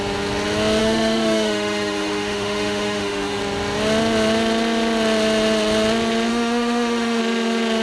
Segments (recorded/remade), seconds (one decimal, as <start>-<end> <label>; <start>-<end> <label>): 0.0-0.8 recorded; 0.8-3.4 remade; 3.4-6.3 recorded; 6.3-7.2 remade; 7.2-7.8 recorded

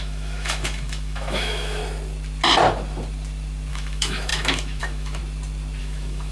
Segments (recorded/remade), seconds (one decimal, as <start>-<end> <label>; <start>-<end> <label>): 0.0-1.8 remade; 1.8-3.7 recorded; 3.7-5.2 remade; 5.2-5.8 recorded; 5.8-6.3 remade

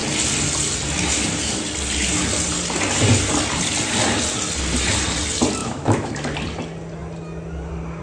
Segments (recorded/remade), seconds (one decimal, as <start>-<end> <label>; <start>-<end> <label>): 0.0-5.6 recorded; 5.6-6.1 remade; 6.1-8.0 recorded

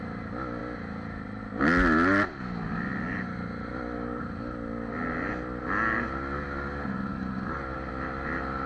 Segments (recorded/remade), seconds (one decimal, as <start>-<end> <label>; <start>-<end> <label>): 0.0-8.7 recorded

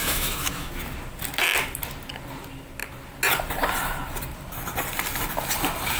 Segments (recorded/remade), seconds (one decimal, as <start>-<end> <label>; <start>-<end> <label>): 0.0-0.7 remade; 0.7-6.0 recorded

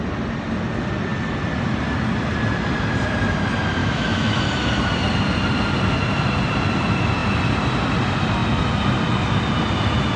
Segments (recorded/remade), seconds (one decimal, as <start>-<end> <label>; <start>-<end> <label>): 0.0-3.8 recorded; 3.8-4.4 remade; 4.4-10.2 recorded

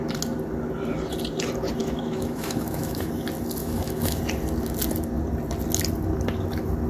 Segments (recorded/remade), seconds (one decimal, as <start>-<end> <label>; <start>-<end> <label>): 0.0-1.8 recorded; 1.8-3.1 remade; 3.1-3.6 recorded; 3.6-4.2 remade; 4.2-6.9 recorded